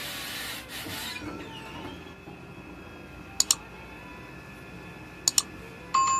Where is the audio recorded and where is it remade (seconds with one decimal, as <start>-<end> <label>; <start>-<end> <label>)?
0.0-6.2 recorded